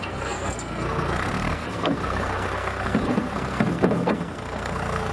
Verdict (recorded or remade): remade